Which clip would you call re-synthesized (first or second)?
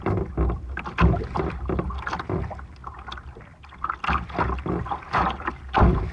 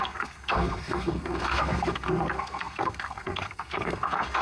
second